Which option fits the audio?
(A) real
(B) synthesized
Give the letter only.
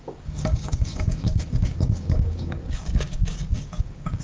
B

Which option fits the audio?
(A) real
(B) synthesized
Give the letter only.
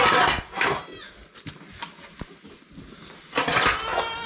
A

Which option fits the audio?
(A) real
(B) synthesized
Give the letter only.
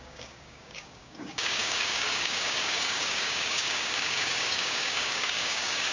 B